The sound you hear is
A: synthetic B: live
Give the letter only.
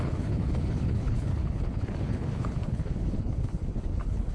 A